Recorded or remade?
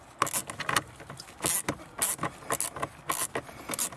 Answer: recorded